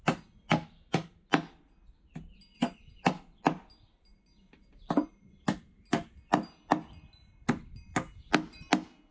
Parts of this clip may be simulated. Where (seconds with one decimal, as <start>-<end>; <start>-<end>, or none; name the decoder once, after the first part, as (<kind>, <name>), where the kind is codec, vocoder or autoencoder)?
4.1-5.3 (vocoder, BigVGAN v2)